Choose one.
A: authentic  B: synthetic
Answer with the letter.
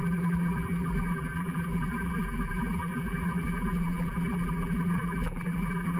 B